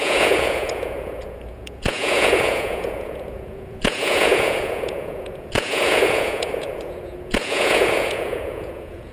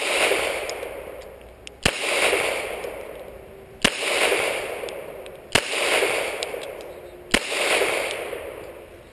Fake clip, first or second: first